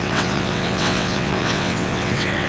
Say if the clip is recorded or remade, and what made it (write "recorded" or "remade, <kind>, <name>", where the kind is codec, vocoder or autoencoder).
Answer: remade, vocoder, WaveNeXt